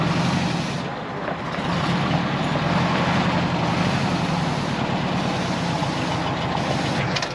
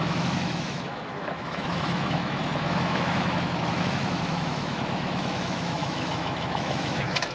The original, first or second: first